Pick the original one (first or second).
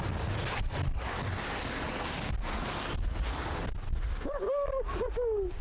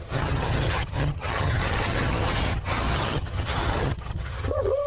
first